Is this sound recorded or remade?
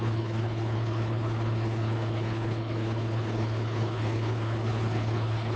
remade